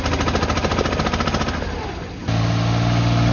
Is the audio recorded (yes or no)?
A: yes